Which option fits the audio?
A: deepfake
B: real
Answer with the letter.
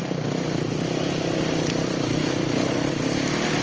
B